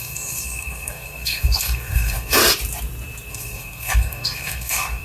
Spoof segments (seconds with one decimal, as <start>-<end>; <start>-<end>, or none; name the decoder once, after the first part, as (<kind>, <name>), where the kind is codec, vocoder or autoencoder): 0.0-2.4 (codec, SNAC); 3.3-5.0